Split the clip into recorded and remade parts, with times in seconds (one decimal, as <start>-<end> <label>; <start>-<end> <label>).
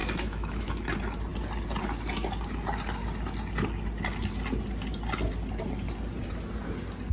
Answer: 0.0-0.7 remade; 0.7-7.1 recorded